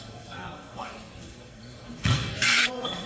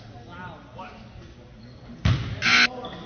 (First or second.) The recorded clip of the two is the second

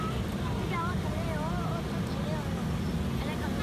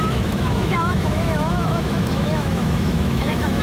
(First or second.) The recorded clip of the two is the first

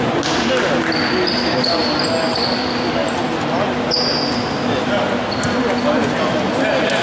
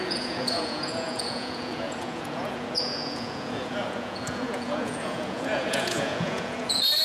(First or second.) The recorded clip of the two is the first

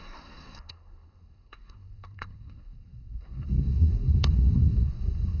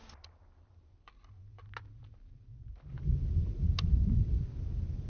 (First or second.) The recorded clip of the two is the second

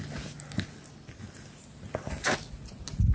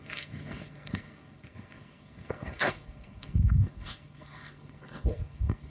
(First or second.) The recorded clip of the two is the first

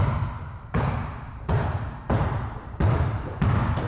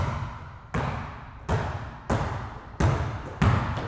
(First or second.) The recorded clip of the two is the second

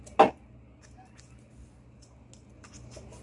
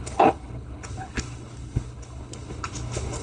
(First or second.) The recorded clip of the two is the first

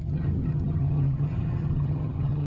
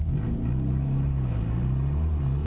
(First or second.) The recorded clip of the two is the second